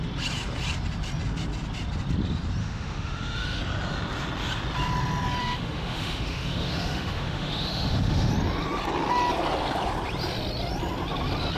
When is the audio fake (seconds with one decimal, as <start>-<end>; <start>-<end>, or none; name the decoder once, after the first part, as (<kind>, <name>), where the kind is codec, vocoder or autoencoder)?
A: 2.6-3.6 (autoencoder, DAC-VAE); 5.4-8.3